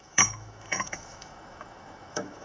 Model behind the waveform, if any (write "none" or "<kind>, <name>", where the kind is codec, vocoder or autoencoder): autoencoder, DAC-VAE